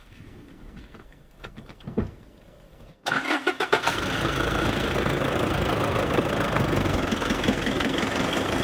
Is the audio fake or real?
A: fake